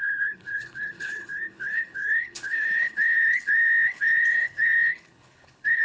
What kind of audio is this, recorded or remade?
remade